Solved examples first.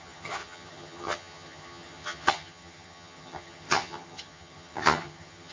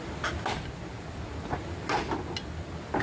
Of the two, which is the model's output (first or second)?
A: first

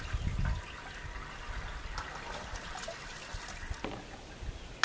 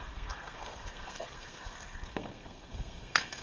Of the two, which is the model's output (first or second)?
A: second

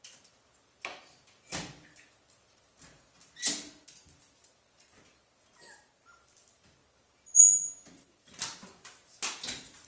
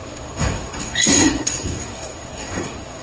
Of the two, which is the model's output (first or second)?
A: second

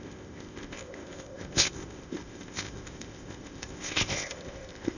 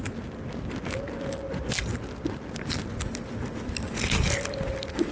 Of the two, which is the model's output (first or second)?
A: first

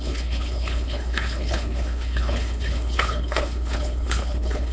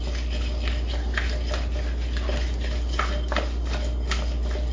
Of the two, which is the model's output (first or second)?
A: first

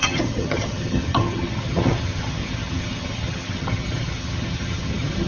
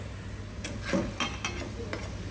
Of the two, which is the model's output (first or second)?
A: first